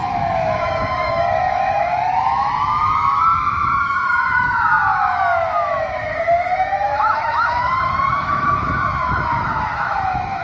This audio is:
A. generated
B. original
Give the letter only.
A